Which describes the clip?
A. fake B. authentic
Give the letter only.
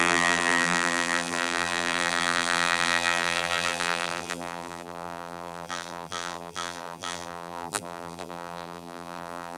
A